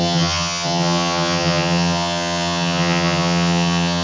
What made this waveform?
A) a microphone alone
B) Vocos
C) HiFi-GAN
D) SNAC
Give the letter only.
C